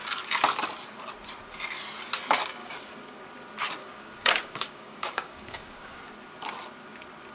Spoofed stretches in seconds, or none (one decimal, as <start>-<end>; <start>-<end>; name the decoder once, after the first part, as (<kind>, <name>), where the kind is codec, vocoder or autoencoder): 2.6-3.2 (codec, DAC); 3.8-6.1